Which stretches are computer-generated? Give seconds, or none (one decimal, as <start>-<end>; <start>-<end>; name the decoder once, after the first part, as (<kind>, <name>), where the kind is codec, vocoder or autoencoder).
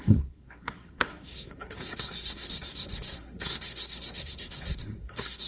0.0-5.5 (codec, SNAC)